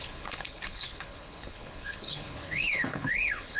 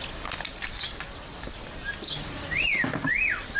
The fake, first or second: first